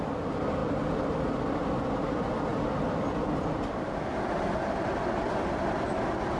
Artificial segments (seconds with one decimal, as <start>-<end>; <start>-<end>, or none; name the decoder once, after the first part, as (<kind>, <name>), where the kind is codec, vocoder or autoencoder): none